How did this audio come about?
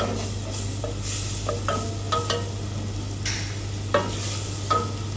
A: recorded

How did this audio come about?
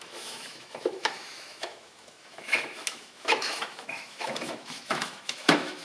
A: remade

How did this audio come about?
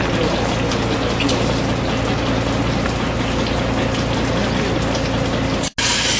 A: recorded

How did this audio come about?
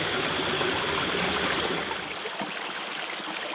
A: recorded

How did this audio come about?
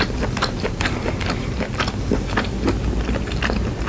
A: recorded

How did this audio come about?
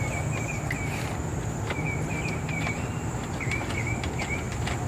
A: recorded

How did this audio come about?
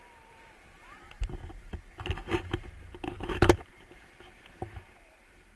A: recorded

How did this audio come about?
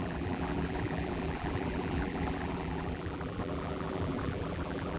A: remade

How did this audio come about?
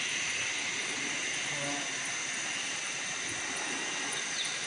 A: recorded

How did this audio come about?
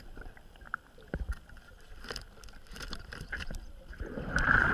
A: remade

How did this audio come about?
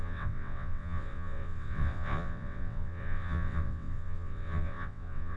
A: remade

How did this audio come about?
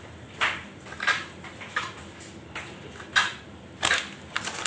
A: remade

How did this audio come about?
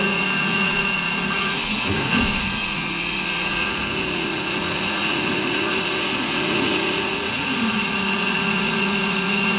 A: remade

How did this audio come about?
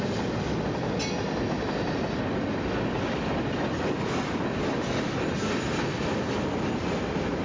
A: recorded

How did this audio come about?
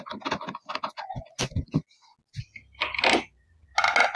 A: recorded